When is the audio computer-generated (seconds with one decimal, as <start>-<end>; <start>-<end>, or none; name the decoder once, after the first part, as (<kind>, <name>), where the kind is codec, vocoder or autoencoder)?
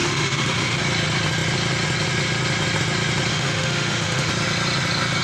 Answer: 0.0-0.8 (autoencoder, DAC-VAE); 3.3-4.3